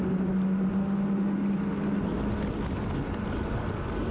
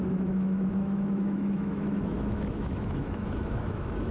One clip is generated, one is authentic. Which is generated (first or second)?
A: second